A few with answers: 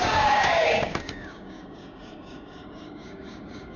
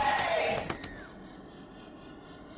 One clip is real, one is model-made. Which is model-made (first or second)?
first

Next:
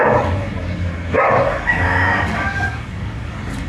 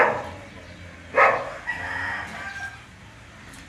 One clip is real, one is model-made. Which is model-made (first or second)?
first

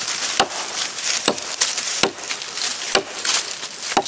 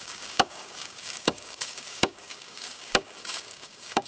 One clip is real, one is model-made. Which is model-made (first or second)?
second